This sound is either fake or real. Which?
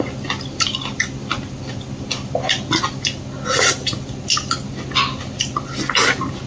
real